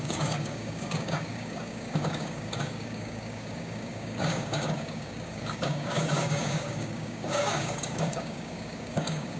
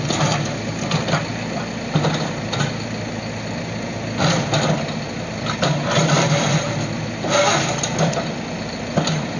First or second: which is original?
second